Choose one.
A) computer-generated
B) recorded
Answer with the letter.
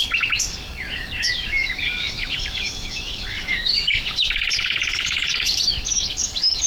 A